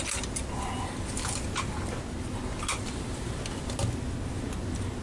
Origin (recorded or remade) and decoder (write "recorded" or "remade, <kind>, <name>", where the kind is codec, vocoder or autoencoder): recorded